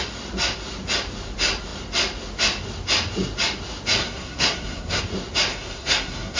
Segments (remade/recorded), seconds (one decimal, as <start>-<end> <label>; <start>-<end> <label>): 0.0-4.0 recorded; 4.0-5.0 remade; 5.0-5.5 recorded; 5.5-6.4 remade